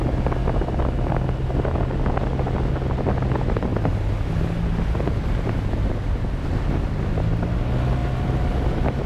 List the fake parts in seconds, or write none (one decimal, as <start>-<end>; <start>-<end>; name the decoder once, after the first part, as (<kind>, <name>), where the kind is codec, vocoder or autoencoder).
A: 8.0-9.1 (vocoder, BigVGAN v2)

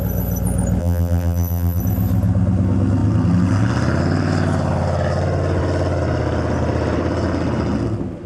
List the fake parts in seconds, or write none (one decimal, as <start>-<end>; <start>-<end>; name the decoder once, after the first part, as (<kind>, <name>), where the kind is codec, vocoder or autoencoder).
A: 0.8-1.8 (vocoder, BigVGAN v2)

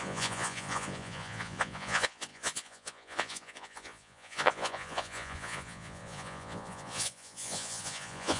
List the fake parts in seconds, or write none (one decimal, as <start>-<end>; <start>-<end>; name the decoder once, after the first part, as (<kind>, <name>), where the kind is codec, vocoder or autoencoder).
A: 0.0-8.4 (vocoder, Vocos)

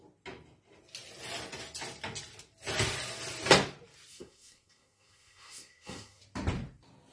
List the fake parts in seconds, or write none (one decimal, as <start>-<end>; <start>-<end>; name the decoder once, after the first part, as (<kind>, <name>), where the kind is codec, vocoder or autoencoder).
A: 4.1-6.2 (codec, SNAC)

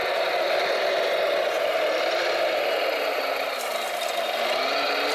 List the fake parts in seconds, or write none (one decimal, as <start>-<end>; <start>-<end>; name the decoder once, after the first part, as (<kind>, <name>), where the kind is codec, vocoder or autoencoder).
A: 0.0-5.1 (vocoder, BigVGAN v2)

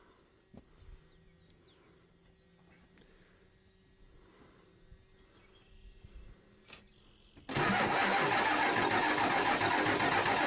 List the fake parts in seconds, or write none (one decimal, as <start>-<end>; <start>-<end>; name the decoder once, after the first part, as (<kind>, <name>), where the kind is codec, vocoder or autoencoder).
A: none